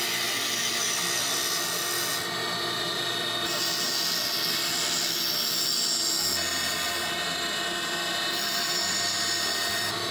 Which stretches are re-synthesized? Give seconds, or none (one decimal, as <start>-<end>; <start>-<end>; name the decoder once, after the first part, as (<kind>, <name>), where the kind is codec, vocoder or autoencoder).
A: none